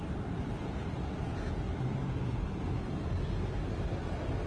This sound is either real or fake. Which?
real